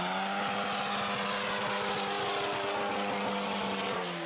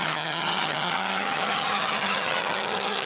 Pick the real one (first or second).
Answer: first